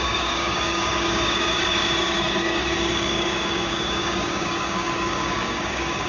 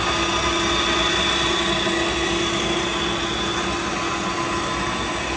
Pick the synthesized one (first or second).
first